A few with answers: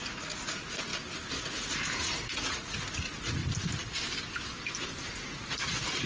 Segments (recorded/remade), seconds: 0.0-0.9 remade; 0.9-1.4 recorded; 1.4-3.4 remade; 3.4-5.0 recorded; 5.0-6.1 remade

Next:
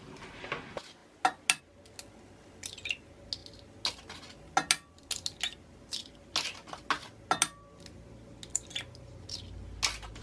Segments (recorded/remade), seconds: 0.0-10.2 recorded